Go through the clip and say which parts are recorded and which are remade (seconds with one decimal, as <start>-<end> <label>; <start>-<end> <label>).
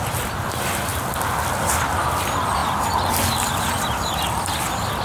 0.0-5.0 recorded